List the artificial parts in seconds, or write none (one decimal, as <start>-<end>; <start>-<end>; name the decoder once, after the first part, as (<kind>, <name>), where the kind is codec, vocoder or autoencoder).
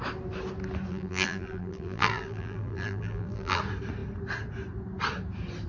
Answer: 0.9-3.6 (vocoder, BigVGAN v2)